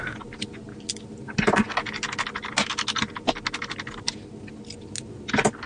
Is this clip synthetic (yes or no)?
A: no